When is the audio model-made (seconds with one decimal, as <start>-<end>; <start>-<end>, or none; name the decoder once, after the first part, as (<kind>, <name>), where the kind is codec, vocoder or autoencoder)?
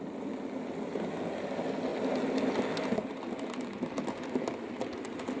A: none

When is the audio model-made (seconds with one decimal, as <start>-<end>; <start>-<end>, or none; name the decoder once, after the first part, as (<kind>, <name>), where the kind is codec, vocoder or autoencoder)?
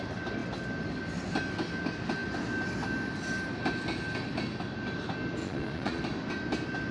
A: 5.4-6.0 (vocoder, Vocos)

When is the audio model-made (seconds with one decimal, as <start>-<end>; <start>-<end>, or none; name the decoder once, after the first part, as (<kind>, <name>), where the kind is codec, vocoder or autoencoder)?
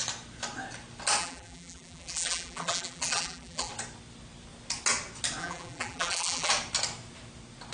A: 1.2-3.7 (vocoder, BigVGAN v2); 5.4-6.5